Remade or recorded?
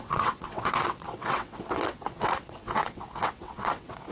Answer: remade